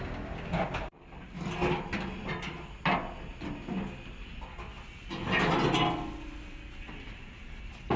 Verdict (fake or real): real